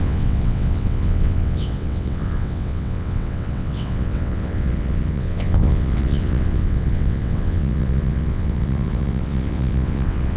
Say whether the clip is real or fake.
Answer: fake